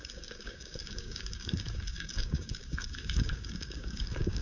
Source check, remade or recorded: remade